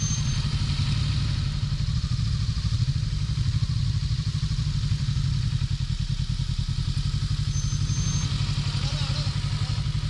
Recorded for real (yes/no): yes